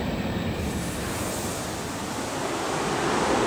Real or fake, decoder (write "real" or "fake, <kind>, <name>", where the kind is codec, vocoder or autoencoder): real